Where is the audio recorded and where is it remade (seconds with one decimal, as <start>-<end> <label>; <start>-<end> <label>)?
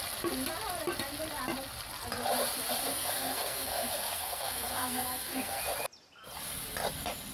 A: 0.0-2.9 recorded; 2.9-5.6 remade; 5.6-7.3 recorded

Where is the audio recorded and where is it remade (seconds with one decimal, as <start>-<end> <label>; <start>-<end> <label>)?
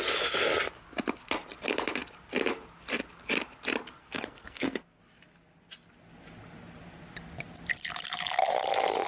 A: 0.0-4.0 recorded; 4.0-5.0 remade; 5.0-9.1 recorded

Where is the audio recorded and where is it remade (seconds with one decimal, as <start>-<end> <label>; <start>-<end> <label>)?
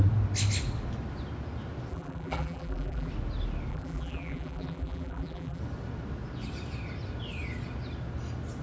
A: 0.0-1.9 recorded; 1.9-3.1 remade; 3.1-3.7 recorded; 3.7-5.6 remade; 5.6-8.6 recorded